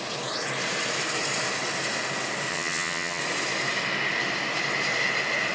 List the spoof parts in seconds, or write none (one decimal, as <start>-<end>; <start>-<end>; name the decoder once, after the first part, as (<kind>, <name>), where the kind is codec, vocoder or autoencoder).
2.5-3.2 (vocoder, HiFi-GAN)